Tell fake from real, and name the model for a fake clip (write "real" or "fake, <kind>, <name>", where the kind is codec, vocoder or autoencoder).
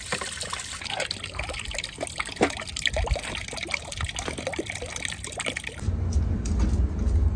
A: real